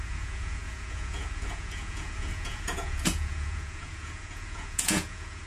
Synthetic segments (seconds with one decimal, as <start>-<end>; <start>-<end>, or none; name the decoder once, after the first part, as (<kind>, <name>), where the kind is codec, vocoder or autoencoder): 0.0-5.5 (vocoder, Vocos)